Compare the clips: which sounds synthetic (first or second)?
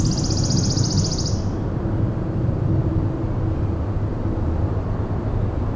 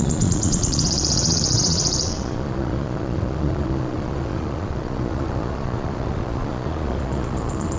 second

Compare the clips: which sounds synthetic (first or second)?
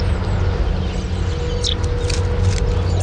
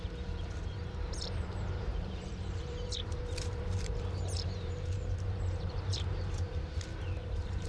second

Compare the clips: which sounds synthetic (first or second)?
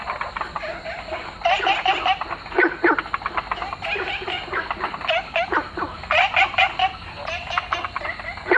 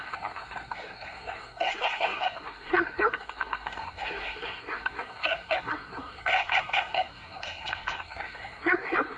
second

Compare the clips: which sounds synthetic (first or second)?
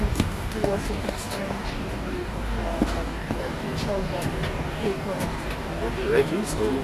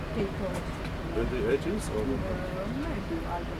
first